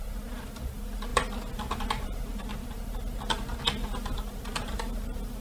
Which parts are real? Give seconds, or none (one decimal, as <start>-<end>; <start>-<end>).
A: 0.0-5.4